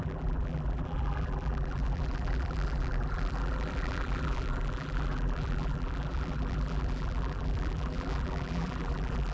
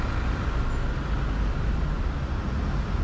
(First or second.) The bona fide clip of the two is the second